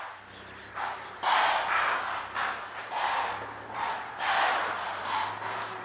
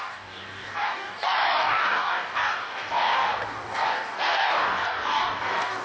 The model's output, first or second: second